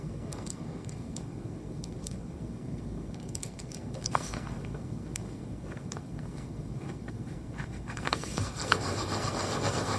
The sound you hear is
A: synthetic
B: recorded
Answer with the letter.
A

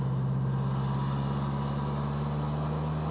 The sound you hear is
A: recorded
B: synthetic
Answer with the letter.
A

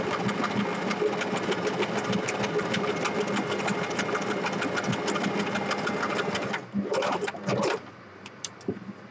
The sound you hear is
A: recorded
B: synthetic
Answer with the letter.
A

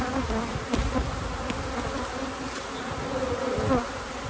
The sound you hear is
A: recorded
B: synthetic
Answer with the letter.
A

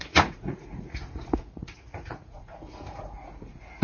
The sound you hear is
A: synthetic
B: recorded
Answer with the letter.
A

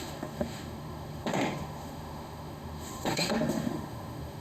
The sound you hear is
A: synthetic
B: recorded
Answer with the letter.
A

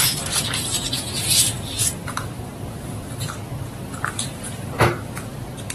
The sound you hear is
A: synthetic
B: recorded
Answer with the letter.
B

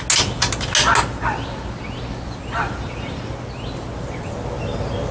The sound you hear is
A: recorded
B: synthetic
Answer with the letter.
A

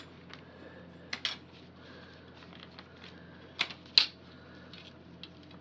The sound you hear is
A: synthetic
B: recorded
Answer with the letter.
B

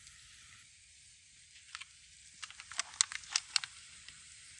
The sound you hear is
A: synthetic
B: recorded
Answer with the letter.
B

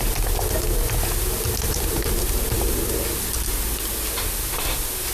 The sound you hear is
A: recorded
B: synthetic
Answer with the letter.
A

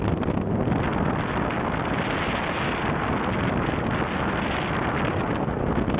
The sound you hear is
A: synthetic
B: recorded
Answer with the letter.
B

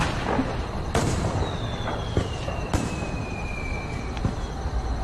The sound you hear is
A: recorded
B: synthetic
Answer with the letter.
A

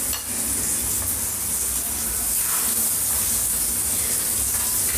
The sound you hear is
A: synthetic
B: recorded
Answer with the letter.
B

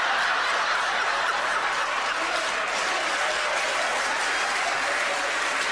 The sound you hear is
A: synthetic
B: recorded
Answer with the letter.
B